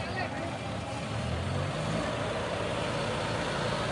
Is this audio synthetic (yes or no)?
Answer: no